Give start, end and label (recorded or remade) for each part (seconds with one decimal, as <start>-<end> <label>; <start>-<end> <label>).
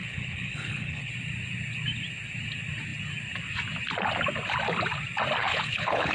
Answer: 0.0-1.1 remade; 1.1-5.4 recorded; 5.4-6.1 remade